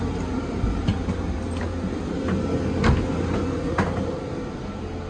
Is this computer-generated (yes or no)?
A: no